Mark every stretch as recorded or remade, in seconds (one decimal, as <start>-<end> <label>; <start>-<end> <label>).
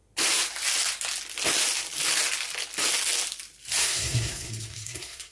0.0-3.8 recorded; 3.8-5.3 remade